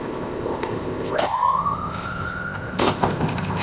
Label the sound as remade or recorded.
remade